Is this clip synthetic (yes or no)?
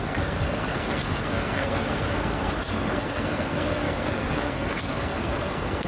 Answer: yes